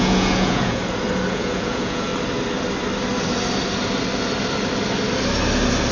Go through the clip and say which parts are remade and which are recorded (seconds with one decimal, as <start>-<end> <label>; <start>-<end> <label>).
0.0-0.8 remade; 0.8-1.3 recorded; 1.3-2.1 remade; 2.1-5.9 recorded